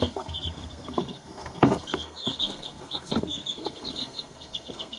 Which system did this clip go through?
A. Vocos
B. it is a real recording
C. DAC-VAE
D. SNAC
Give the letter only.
D